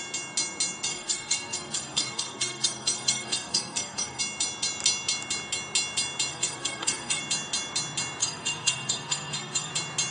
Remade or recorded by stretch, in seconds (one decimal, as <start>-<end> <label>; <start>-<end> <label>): 0.0-0.9 recorded; 0.9-4.2 remade; 4.2-6.3 recorded; 6.3-7.2 remade; 7.2-8.2 recorded; 8.2-9.7 remade; 9.7-10.1 recorded